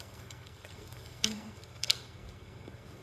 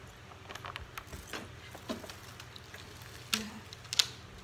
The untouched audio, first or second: second